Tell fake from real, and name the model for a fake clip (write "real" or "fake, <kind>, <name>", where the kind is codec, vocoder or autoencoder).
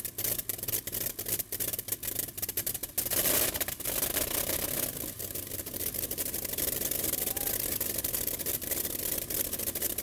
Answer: real